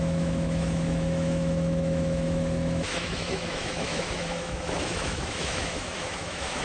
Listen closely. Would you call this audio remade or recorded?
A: remade